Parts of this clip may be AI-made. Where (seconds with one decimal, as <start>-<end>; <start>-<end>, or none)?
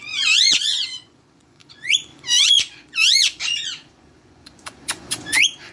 0.0-5.7